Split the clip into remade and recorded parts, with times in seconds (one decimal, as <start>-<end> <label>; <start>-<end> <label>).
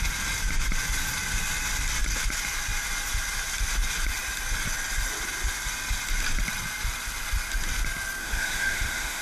0.0-8.2 recorded; 8.2-9.2 remade